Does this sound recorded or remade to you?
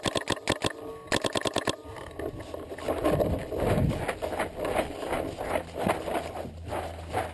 recorded